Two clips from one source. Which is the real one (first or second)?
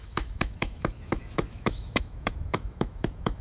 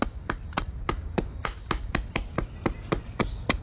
second